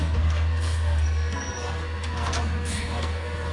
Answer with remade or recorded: remade